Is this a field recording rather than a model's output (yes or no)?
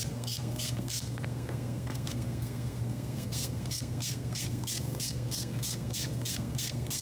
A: no